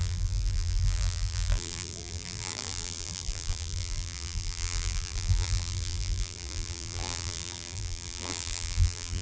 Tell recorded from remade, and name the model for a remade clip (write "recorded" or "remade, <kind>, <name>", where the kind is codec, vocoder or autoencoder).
remade, vocoder, BigVGAN v2